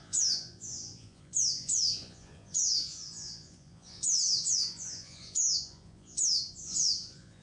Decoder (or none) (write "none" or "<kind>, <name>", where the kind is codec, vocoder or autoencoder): vocoder, Vocos